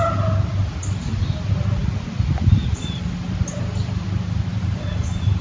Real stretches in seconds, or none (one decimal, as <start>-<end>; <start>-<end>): 0.0-4.5